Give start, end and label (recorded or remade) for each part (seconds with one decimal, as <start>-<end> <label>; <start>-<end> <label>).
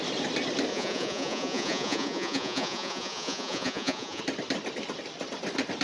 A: 0.0-0.7 recorded; 0.7-4.2 remade; 4.2-5.8 recorded